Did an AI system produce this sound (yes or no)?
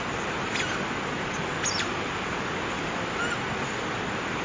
no